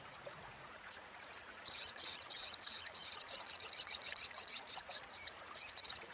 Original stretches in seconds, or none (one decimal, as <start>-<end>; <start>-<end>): none